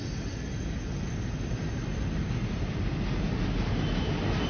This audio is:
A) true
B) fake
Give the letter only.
A